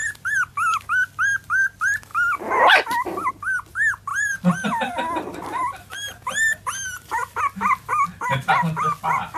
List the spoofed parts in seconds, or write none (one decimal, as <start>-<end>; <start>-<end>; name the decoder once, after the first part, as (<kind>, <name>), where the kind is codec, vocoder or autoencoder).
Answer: 0.0-0.8 (vocoder, BigVGAN v2); 4.1-7.4